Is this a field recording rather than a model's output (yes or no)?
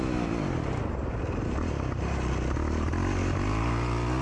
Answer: yes